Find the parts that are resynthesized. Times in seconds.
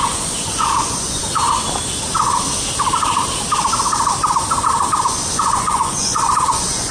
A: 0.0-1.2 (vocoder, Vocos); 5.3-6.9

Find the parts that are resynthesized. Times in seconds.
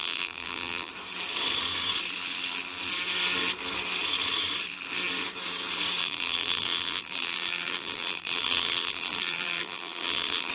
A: 0.0-0.9 (vocoder, BigVGAN v2); 6.0-10.5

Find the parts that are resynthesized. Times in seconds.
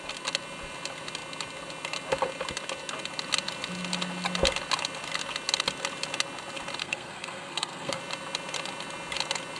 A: 6.8-8.0 (codec, SNAC)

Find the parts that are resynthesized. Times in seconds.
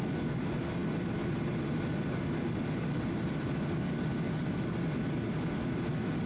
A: none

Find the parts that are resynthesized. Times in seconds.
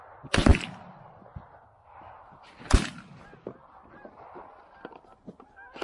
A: none